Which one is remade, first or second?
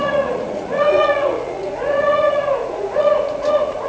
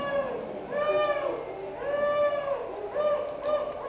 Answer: first